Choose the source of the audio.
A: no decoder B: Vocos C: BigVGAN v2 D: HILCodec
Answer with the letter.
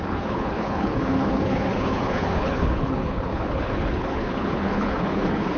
D